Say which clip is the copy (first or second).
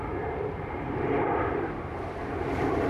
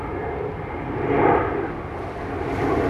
first